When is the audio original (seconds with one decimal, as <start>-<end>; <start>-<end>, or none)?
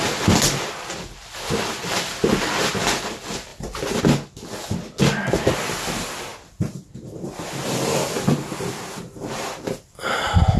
0.0-3.5; 4.0-6.3; 8.5-9.2; 9.7-10.6